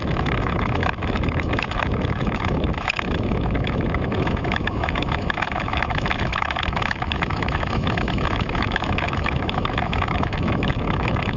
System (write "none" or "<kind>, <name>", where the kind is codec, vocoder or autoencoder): autoencoder, DAC-VAE